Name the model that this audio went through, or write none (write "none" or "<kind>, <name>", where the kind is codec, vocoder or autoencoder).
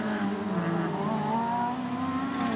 none